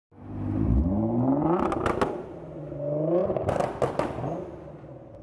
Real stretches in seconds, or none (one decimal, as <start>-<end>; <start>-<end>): 0.0-5.2